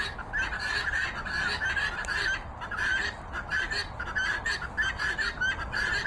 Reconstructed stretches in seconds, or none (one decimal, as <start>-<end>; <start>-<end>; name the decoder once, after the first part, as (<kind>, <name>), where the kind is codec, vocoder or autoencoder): none